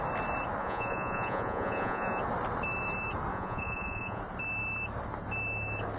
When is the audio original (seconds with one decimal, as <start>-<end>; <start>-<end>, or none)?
0.0-0.6; 2.2-3.3; 4.2-6.0